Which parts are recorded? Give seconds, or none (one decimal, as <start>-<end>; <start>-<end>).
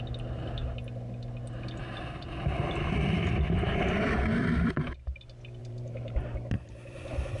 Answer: 0.0-5.6